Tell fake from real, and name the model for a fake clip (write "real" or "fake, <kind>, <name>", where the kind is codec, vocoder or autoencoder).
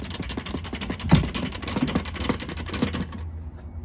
real